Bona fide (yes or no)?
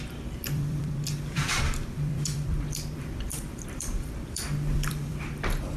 no